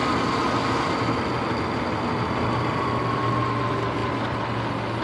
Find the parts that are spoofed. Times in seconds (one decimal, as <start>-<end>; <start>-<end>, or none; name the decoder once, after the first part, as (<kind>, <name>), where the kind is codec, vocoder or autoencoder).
none